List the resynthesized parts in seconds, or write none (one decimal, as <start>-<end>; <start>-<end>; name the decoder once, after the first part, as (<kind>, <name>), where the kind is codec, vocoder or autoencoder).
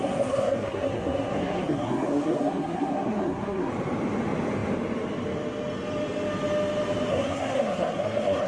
0.0-3.7 (codec, SNAC); 7.1-8.5